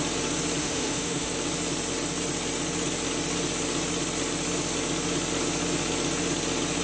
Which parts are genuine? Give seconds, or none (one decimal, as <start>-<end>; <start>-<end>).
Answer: 0.0-0.6; 1.3-6.8